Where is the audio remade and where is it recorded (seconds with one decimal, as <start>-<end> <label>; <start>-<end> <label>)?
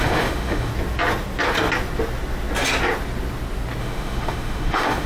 0.0-0.7 remade; 0.7-3.8 recorded; 3.8-5.1 remade